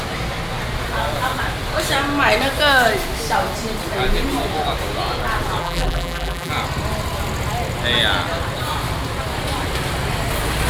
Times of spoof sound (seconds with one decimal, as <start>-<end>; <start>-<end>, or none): 5.6-6.5